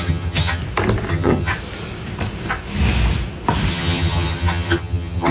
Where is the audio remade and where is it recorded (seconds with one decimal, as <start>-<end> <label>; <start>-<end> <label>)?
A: 0.0-0.6 remade; 0.6-1.1 recorded; 1.1-1.5 remade; 1.5-3.7 recorded; 3.7-5.3 remade